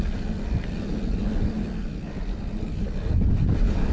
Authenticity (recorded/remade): recorded